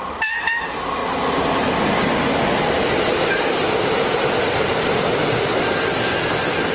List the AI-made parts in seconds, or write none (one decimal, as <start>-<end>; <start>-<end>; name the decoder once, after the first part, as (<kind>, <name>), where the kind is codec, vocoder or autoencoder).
0.0-1.0 (vocoder, BigVGAN v2); 4.6-6.7